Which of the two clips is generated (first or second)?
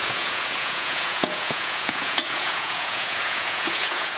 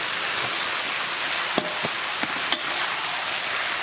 first